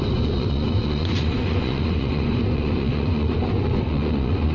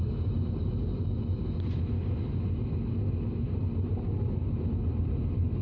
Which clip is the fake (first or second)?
first